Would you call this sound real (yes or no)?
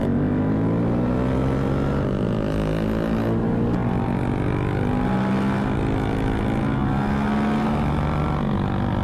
yes